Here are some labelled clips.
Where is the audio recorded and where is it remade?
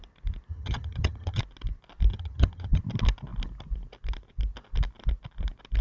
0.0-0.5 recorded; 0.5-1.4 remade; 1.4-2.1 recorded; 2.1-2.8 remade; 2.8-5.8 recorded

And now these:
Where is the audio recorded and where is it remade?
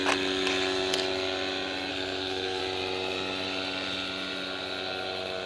0.0-1.9 recorded; 1.9-2.6 remade; 2.6-5.5 recorded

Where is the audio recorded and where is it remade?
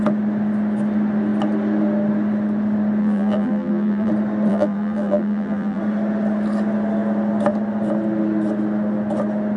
0.0-3.0 recorded; 3.0-4.1 remade; 4.1-4.5 recorded; 4.5-5.8 remade; 5.8-9.6 recorded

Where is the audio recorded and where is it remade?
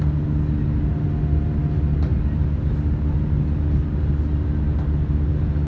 0.0-5.7 recorded